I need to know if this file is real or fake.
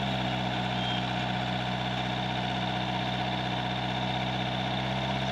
real